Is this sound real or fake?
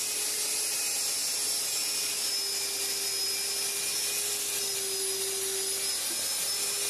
real